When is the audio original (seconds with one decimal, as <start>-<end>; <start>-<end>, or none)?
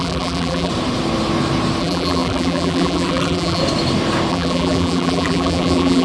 0.7-1.8; 3.6-4.3